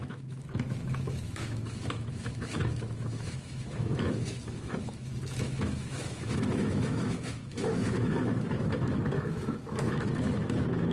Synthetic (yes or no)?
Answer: yes